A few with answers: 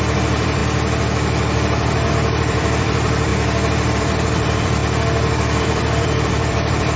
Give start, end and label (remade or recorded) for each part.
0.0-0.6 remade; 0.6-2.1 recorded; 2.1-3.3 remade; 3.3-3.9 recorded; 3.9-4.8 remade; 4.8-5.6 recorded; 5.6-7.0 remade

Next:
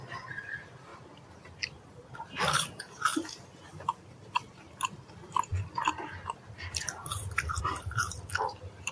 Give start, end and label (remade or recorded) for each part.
0.0-0.9 remade; 0.9-1.6 recorded; 1.6-8.9 remade

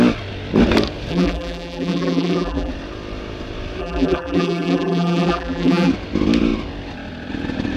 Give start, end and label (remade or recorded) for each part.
0.0-1.1 recorded; 1.1-2.7 remade; 2.7-3.8 recorded; 3.8-5.9 remade; 5.9-7.8 recorded

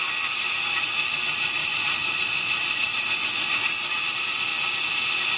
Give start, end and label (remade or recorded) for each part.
0.0-1.6 recorded; 1.6-3.0 remade; 3.0-5.4 recorded

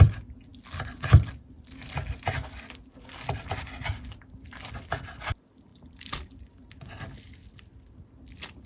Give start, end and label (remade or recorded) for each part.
0.0-5.7 recorded; 5.7-6.2 remade; 6.2-8.7 recorded

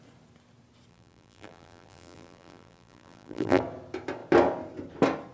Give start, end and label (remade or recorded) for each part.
0.0-0.9 recorded; 0.9-3.6 remade; 3.6-5.3 recorded

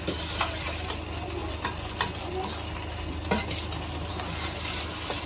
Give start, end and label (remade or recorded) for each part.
0.0-5.3 recorded